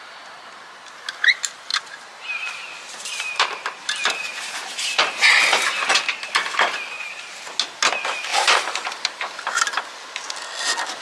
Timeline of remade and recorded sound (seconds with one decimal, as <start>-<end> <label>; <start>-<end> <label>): 0.0-1.7 recorded; 1.7-5.3 remade; 5.3-6.4 recorded; 6.4-7.2 remade; 7.2-8.3 recorded; 8.3-9.8 remade; 9.8-11.0 recorded